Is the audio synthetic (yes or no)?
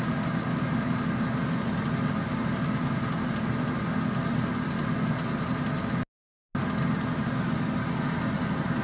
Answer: no